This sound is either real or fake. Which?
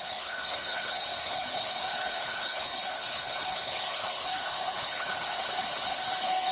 fake